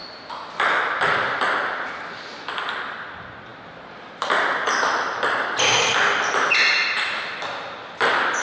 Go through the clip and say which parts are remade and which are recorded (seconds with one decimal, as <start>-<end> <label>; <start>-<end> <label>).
0.0-8.4 recorded